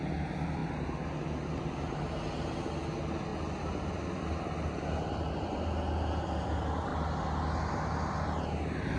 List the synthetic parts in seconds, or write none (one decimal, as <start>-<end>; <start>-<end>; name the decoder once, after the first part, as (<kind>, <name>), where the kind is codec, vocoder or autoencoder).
none